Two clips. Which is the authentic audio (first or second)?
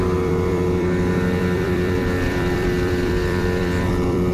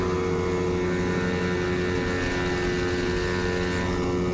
second